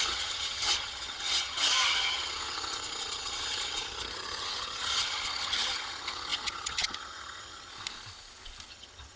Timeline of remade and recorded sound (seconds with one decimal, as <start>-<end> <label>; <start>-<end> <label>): 0.0-7.7 remade; 7.7-8.7 recorded; 8.7-9.2 remade